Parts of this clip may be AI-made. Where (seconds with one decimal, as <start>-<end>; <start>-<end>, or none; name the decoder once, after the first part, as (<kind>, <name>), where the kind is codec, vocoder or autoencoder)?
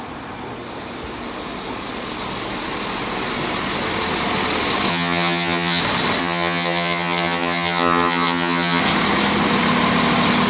4.9-5.8 (vocoder, HiFi-GAN); 6.2-8.8